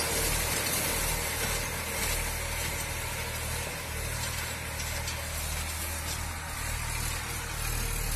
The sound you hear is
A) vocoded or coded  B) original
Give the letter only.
B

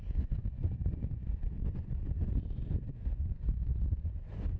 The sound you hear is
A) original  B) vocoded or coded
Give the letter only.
B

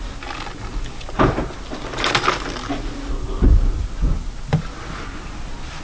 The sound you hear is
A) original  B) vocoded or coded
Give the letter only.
A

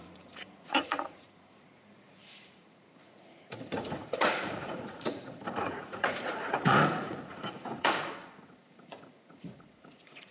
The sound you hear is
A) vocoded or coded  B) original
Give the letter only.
A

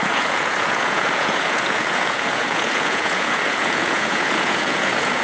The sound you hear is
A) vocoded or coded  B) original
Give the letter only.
A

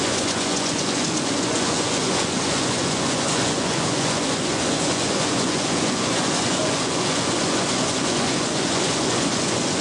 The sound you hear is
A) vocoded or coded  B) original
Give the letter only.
A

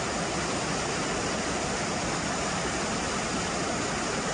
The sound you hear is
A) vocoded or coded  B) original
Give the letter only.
B